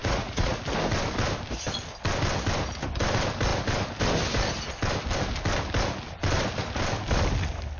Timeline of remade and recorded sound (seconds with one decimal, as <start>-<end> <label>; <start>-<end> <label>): 0.0-0.6 remade; 0.6-7.8 recorded